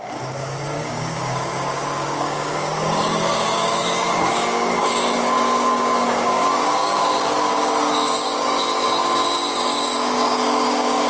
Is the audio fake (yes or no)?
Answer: yes